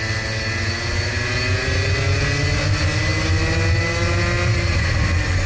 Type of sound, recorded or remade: recorded